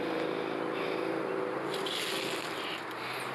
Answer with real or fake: real